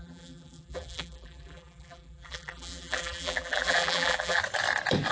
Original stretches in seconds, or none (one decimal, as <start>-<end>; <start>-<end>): 4.4-5.1